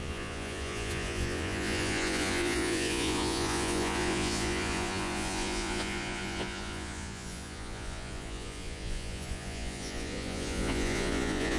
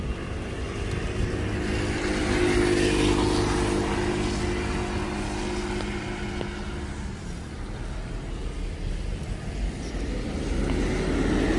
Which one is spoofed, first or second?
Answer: first